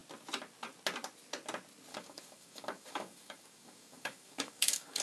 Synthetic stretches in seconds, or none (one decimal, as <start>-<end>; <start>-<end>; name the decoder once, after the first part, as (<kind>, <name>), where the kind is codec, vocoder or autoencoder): 1.9-5.0 (codec, DAC)